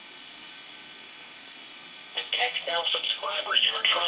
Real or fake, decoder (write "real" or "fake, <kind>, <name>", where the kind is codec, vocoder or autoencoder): fake, codec, SNAC